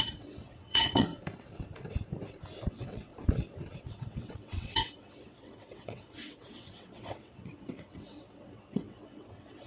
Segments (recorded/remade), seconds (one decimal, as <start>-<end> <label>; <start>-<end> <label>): 0.0-1.1 remade; 1.1-2.7 recorded; 2.7-3.1 remade; 3.1-3.8 recorded; 3.8-9.7 remade